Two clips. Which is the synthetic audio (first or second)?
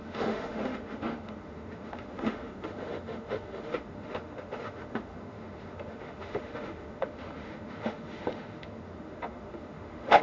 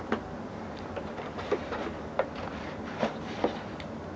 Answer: first